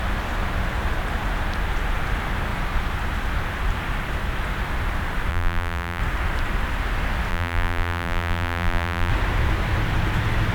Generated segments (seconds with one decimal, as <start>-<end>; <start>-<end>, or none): 5.3-6.0; 7.3-9.1